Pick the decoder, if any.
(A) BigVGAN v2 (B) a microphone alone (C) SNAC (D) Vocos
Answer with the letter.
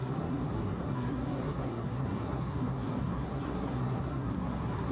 C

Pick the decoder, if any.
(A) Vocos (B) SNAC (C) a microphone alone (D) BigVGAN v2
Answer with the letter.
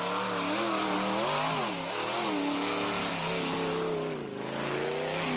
C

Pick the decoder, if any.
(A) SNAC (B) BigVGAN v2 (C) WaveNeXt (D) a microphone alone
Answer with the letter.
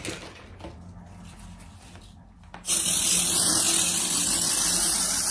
D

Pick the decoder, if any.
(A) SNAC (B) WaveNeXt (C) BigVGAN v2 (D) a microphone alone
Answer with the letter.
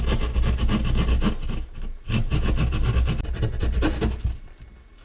D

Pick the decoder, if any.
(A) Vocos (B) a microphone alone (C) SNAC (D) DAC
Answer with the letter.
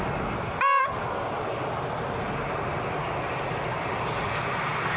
B